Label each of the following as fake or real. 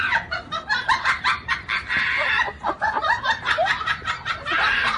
fake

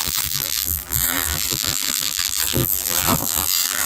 fake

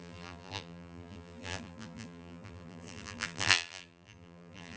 fake